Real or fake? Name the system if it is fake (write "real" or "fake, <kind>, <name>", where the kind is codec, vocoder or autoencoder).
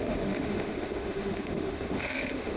fake, autoencoder, DAC-VAE